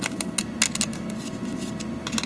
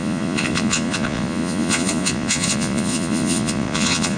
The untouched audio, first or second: first